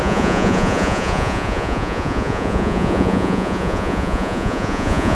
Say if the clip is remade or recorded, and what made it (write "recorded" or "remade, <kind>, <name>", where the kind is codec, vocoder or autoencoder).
remade, vocoder, Vocos